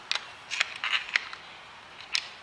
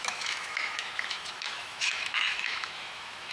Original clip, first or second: first